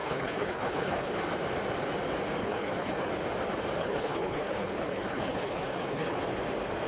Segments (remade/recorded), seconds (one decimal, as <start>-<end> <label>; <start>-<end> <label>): 0.0-1.1 remade; 1.1-2.4 recorded; 2.4-3.1 remade; 3.1-3.8 recorded; 3.8-6.2 remade; 6.2-6.9 recorded